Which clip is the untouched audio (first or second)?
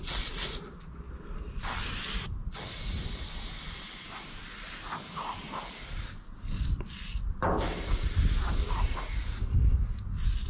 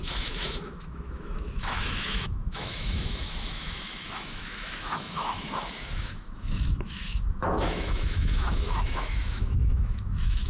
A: first